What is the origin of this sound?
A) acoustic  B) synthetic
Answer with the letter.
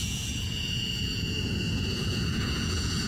B